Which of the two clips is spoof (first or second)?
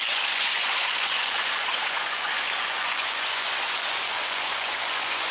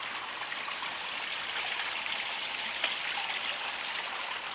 first